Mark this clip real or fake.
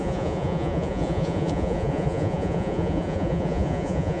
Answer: fake